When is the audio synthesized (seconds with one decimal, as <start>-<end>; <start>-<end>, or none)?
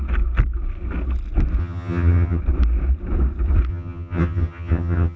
1.6-2.4; 3.7-5.2